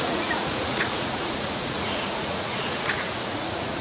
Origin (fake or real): fake